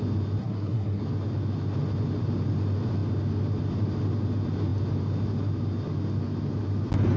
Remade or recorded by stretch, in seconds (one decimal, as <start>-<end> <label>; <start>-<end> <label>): 0.0-0.4 recorded; 0.4-1.0 remade; 1.0-7.2 recorded